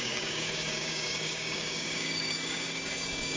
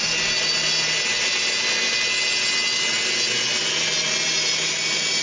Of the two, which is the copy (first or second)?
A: first